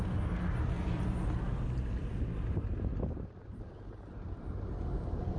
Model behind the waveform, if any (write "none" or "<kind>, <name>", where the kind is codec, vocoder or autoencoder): none